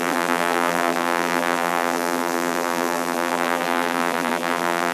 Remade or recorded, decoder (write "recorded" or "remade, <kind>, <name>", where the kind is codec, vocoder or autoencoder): remade, vocoder, BigVGAN v2